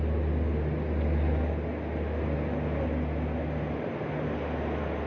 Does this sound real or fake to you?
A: real